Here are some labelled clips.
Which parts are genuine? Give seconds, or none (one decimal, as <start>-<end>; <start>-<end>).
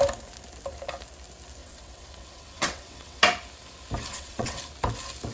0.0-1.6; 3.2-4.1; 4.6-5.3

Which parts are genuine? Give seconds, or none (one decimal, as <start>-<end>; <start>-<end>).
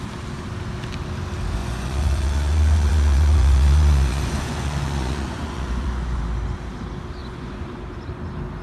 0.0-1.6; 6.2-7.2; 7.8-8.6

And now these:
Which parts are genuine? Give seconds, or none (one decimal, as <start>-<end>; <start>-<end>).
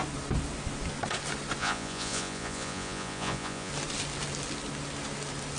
0.0-1.6; 3.7-5.6